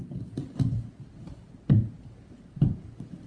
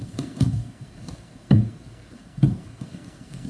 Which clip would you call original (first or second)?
first